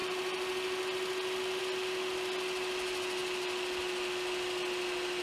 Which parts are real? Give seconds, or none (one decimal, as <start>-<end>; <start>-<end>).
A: 0.0-5.2